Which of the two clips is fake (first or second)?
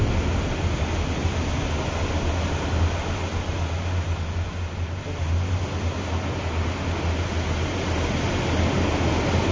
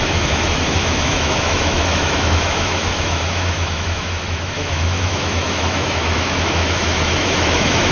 second